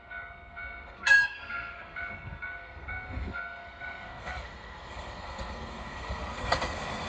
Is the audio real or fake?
fake